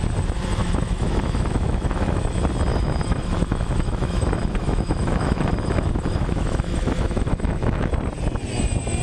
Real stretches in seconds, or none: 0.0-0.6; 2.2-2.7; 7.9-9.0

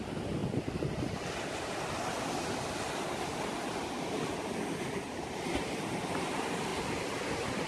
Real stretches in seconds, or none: 0.0-7.7

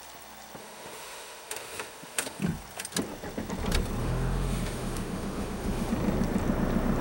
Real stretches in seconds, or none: 0.0-0.6; 2.4-4.0; 5.9-7.0

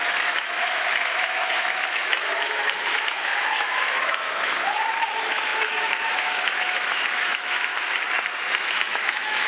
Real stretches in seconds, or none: 7.7-8.6

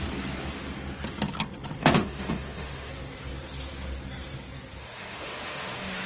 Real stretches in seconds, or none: 0.0-1.8; 2.9-4.8

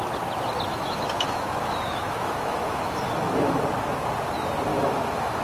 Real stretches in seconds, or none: 0.0-0.7; 3.6-4.7

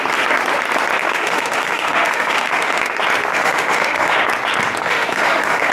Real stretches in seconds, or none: 0.0-1.0; 2.8-3.3; 4.2-4.8